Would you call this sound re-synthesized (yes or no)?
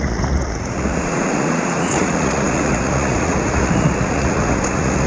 yes